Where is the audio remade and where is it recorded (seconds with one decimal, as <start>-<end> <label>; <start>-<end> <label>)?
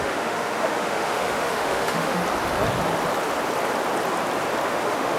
0.0-2.2 remade; 2.2-4.7 recorded; 4.7-5.2 remade